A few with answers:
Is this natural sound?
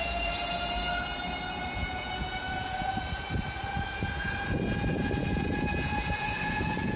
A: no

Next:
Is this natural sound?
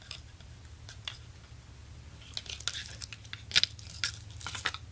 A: yes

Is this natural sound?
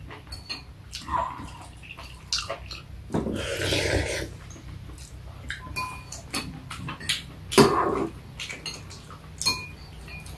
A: yes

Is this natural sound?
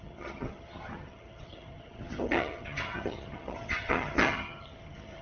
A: no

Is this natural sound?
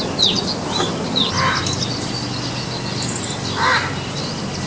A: yes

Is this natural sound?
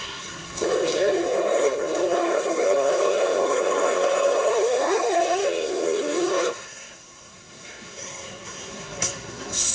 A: no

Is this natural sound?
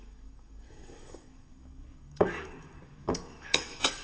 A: no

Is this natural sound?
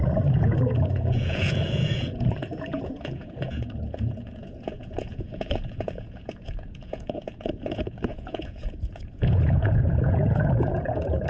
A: no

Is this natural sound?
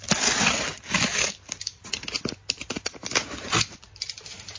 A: yes